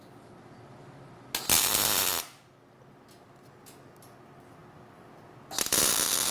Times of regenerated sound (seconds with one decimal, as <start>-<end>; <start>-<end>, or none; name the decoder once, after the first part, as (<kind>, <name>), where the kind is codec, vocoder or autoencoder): none